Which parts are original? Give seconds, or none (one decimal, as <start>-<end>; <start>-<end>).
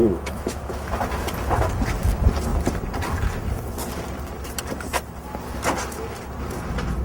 0.9-7.0